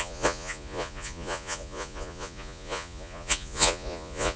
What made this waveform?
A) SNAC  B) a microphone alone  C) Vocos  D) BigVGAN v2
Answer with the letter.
C